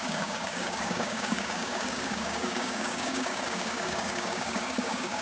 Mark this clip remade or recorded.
remade